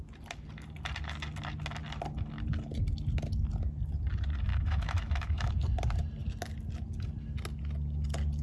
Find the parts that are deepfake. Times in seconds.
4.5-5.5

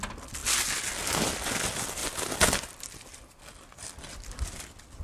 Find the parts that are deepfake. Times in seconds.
none

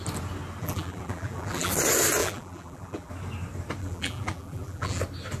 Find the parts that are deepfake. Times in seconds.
0.6-1.7; 2.2-3.1; 3.8-5.0

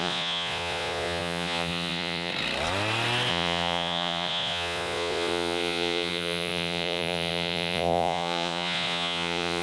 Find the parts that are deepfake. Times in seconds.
0.0-2.3; 3.3-9.6